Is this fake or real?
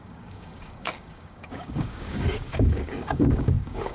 fake